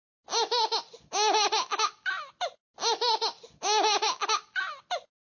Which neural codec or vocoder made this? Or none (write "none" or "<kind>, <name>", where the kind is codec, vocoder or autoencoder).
none